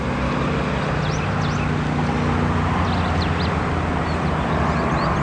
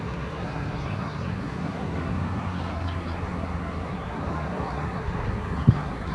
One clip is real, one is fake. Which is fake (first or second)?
second